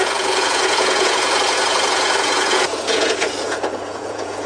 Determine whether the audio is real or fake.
fake